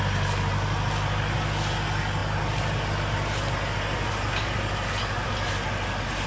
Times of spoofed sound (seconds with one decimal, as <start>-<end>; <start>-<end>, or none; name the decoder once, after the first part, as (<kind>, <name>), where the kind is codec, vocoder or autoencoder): none